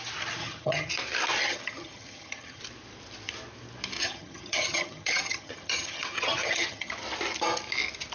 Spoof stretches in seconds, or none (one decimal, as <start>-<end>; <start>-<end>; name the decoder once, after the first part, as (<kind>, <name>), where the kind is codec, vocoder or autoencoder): 0.4-0.9 (vocoder, HiFi-GAN); 1.4-2.6; 4.0-6.9